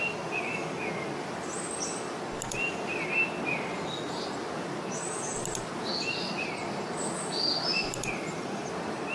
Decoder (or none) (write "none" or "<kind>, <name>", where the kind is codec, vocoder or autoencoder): none